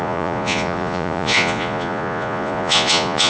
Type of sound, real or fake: fake